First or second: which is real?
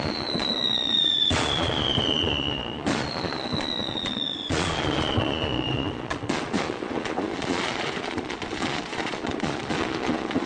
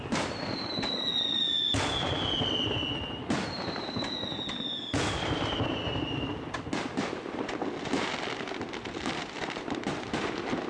second